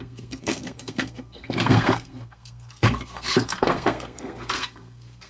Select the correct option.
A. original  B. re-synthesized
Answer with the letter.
B